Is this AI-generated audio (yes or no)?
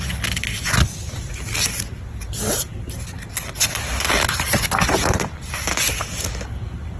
no